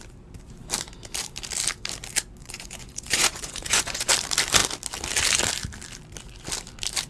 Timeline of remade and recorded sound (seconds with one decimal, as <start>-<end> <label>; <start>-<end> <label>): 0.0-2.4 recorded; 2.4-4.1 remade; 4.1-7.1 recorded